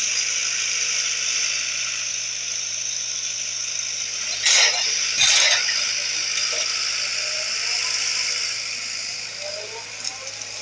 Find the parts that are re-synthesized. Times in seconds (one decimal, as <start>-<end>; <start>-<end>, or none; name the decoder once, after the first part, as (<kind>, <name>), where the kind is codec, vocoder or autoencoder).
0.0-10.6 (vocoder, BigVGAN v2)

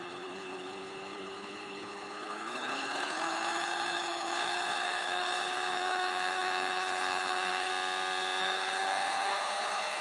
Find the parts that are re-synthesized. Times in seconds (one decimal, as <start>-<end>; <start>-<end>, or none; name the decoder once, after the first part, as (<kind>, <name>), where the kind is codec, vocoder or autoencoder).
0.0-7.7 (codec, HILCodec); 8.4-10.0

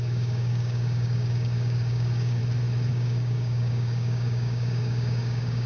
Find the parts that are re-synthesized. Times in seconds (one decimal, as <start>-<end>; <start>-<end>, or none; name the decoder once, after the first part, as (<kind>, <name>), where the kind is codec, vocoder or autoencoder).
0.0-2.4 (codec, DAC); 2.9-5.7